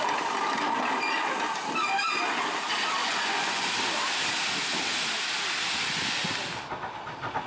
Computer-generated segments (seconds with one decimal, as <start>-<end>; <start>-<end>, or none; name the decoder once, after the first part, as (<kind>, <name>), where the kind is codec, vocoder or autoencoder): 3.0-3.7 (vocoder, Vocos)